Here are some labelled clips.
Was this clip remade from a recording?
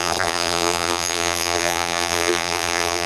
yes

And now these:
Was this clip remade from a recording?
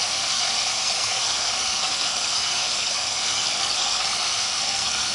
yes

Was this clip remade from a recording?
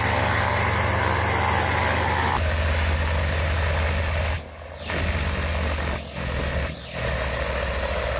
no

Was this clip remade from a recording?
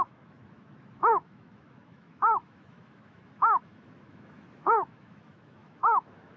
yes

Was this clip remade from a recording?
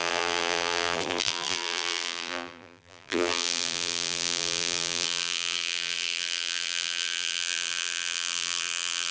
yes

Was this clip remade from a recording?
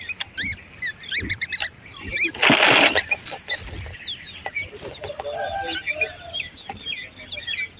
no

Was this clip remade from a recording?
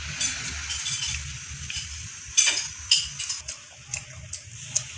no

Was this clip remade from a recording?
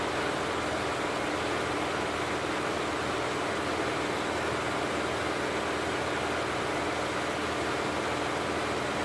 no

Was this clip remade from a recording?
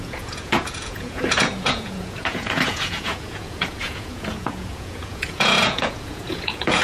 yes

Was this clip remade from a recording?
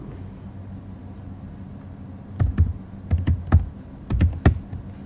no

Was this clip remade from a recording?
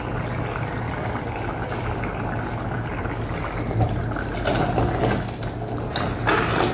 no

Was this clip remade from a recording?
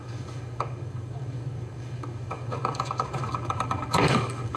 yes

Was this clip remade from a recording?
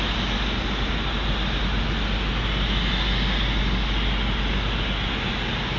no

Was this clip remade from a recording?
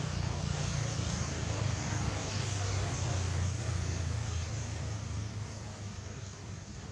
yes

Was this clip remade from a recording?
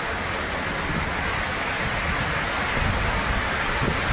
no